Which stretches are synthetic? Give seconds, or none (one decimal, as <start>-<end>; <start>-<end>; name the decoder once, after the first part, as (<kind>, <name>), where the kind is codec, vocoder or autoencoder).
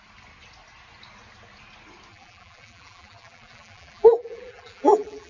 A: 2.1-5.3 (vocoder, BigVGAN v2)